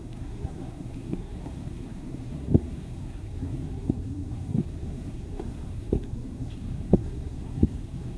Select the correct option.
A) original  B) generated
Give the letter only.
B